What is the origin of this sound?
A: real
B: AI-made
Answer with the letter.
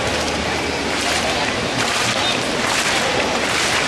A